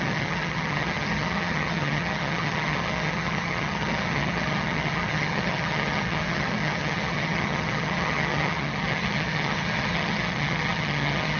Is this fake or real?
fake